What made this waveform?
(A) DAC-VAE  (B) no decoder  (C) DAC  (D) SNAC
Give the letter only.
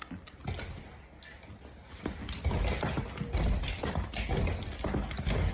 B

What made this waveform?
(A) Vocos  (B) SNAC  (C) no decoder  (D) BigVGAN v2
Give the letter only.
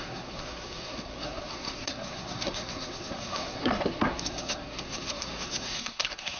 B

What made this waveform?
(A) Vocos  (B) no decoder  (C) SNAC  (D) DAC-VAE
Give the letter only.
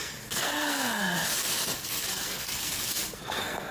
C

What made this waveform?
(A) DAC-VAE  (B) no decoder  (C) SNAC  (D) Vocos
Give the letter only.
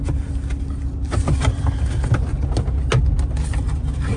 B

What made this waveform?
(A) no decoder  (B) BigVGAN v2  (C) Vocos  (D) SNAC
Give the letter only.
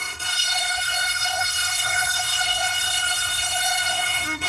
D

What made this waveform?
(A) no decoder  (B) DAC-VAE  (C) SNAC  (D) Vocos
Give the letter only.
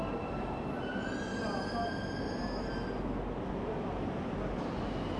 A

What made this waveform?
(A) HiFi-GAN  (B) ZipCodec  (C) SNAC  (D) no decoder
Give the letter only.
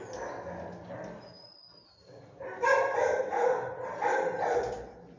D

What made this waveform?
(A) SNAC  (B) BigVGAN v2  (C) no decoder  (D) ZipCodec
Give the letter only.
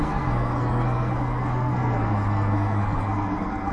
A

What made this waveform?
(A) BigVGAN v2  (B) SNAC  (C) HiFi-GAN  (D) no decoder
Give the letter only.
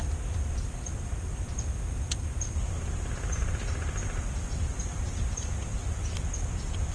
D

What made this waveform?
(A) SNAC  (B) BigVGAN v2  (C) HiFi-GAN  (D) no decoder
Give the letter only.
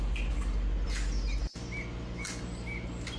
D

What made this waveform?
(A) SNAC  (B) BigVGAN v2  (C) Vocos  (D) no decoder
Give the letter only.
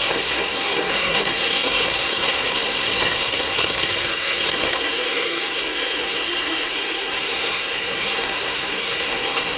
A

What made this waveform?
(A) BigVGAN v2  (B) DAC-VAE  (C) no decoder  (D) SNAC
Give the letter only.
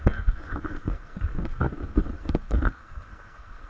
D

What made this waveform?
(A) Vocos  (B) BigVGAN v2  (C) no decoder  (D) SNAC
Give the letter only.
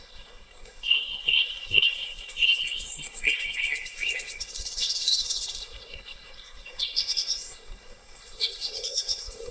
D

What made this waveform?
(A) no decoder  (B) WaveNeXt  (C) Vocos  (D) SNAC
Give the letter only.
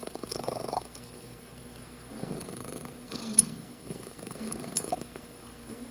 D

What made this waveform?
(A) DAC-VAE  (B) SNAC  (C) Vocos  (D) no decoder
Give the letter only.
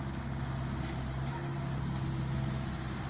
D